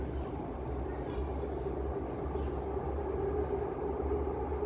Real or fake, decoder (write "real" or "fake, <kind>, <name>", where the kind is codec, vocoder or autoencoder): real